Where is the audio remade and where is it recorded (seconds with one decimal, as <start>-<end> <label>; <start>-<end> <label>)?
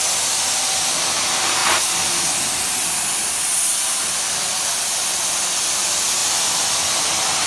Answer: 0.0-7.5 recorded